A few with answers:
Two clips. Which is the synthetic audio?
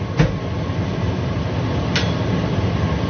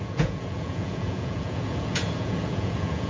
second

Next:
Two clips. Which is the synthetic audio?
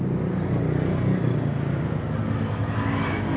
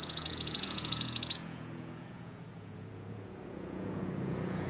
second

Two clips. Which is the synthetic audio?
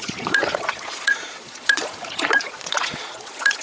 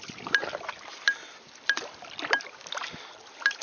first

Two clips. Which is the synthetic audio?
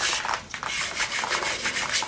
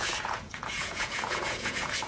second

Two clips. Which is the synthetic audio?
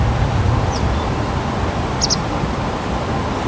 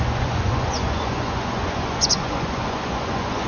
second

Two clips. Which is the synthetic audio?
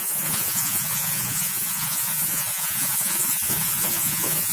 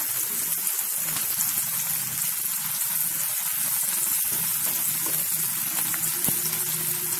first